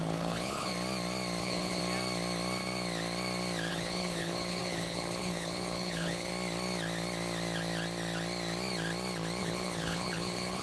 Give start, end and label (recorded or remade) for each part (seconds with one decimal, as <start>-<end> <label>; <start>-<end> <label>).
0.0-0.7 remade; 0.7-1.4 recorded; 1.4-1.8 remade; 1.8-3.7 recorded; 3.7-6.3 remade; 6.3-9.4 recorded; 9.4-10.6 remade